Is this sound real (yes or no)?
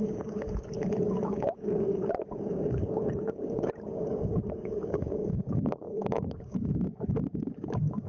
no